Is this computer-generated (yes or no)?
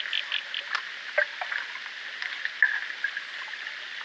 no